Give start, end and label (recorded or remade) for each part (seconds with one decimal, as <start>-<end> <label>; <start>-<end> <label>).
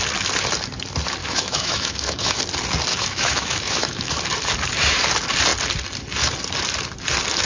0.0-1.2 recorded; 1.2-2.4 remade; 2.4-2.9 recorded; 2.9-4.1 remade; 4.1-7.5 recorded